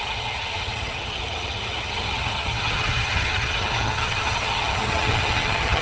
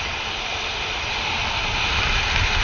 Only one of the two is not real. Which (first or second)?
first